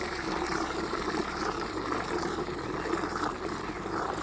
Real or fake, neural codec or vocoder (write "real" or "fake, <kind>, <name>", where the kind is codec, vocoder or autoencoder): fake, vocoder, BigVGAN v2